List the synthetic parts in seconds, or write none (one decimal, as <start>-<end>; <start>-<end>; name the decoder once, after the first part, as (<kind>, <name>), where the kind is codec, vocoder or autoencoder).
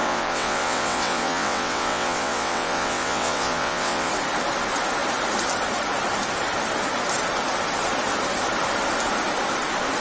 0.0-4.1 (vocoder, WaveNeXt)